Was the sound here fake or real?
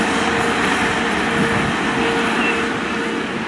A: real